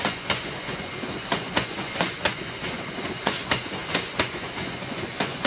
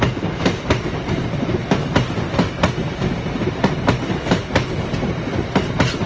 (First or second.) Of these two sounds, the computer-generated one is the first